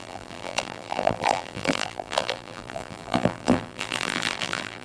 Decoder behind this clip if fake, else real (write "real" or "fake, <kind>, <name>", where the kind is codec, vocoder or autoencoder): fake, vocoder, BigVGAN v2